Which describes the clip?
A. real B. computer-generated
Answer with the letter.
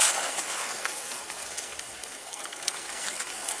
B